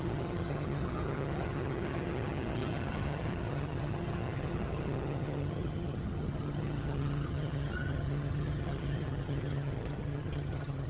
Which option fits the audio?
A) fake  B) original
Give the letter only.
A